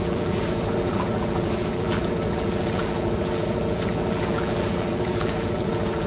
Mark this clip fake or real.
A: fake